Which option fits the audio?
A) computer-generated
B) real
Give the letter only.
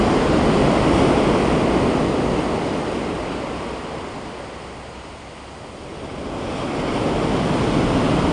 B